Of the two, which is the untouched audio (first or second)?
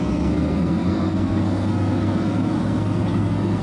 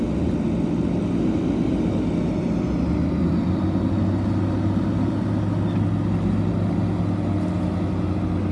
second